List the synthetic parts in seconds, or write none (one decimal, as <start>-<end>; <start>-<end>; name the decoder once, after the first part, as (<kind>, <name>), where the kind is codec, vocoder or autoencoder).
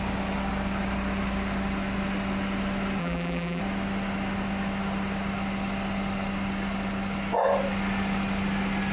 3.0-3.6 (vocoder, BigVGAN v2)